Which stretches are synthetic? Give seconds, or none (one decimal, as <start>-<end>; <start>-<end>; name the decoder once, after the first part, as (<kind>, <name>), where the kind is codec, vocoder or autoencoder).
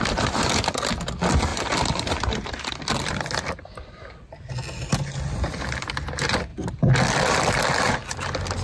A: 1.5-4.5 (vocoder, BigVGAN v2); 6.5-8.0